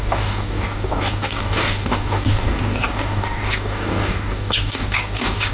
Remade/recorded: remade